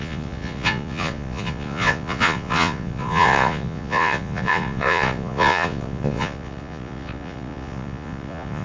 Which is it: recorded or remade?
remade